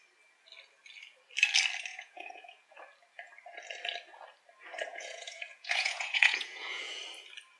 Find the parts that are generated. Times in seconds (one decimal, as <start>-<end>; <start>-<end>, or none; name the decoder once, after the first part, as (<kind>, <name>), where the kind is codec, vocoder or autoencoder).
1.9-2.8 (vocoder, Vocos); 4.9-7.0